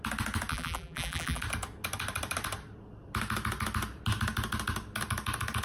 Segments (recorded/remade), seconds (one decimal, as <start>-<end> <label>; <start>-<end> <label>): 0.0-0.5 recorded; 0.5-1.4 remade; 1.4-5.6 recorded